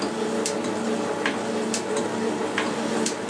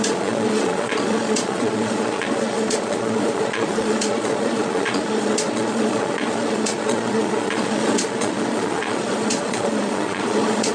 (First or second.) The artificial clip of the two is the second